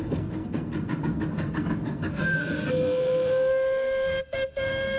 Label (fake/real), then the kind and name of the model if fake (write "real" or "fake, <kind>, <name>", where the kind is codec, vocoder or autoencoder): fake, codec, SNAC